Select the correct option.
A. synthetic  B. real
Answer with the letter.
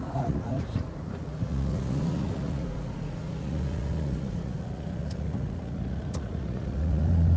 A